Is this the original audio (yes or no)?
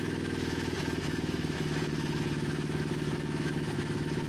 no